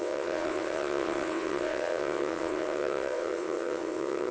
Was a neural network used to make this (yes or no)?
yes